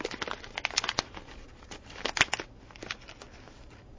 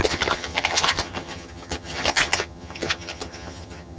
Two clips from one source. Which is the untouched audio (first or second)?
first